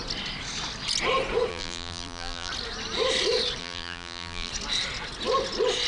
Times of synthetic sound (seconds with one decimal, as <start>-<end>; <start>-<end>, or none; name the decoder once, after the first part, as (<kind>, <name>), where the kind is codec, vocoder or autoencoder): 1.5-2.5 (vocoder, BigVGAN v2); 3.6-4.5